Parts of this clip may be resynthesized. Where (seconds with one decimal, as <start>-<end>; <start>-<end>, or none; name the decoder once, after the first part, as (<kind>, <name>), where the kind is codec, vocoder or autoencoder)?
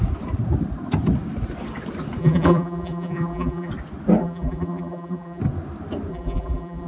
2.2-3.7 (vocoder, BigVGAN v2); 4.2-5.4; 6.1-6.9